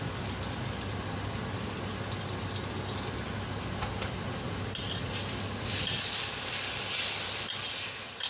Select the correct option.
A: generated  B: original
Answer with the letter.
B